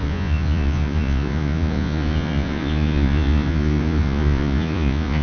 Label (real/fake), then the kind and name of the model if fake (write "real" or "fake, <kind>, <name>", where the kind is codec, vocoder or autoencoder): fake, vocoder, Vocos